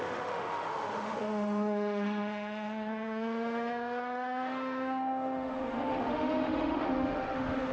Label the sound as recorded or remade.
remade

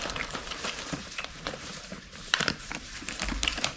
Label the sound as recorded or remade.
remade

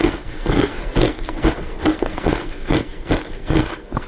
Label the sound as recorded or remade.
remade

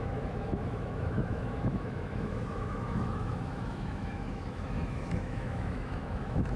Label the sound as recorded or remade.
remade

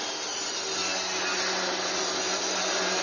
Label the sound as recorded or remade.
recorded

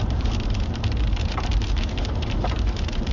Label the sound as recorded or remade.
remade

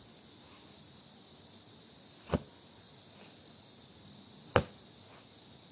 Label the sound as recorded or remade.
recorded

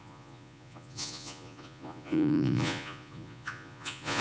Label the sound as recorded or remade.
remade